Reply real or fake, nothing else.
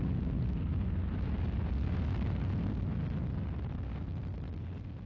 real